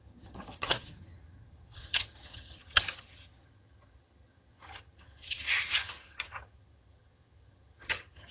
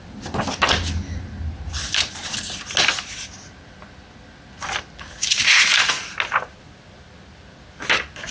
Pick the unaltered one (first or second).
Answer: second